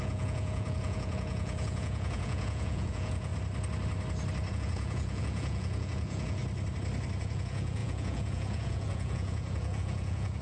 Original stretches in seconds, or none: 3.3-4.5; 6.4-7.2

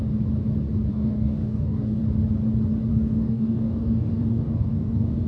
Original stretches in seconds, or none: 0.0-0.9; 2.0-2.9

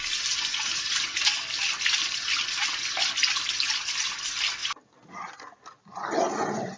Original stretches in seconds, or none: 0.0-6.8

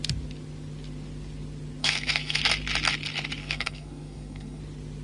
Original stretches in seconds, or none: 0.0-1.8; 2.4-3.4; 4.6-5.0

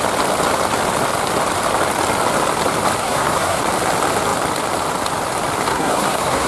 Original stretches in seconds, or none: 0.0-3.0; 3.6-5.7